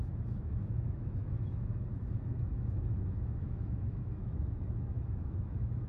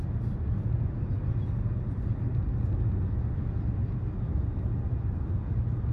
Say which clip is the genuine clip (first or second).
second